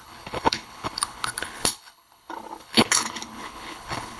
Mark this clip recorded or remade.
remade